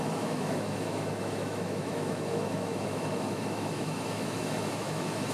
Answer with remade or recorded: remade